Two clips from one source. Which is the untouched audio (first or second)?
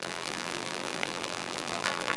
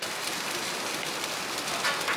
second